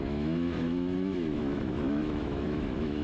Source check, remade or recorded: remade